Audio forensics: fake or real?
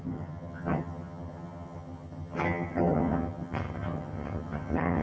fake